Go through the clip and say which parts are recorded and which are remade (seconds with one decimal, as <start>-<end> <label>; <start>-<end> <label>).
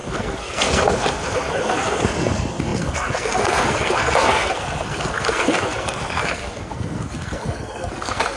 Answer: 0.0-8.4 remade